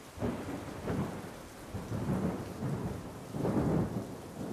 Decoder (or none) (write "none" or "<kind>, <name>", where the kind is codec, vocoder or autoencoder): vocoder, BigVGAN v2